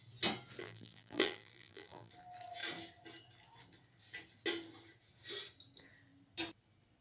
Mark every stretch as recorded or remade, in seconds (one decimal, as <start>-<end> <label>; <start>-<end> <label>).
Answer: 0.0-0.6 recorded; 0.6-2.1 remade; 2.1-7.0 recorded